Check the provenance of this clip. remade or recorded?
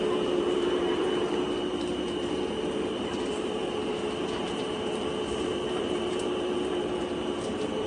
remade